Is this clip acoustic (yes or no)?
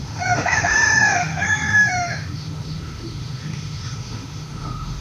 no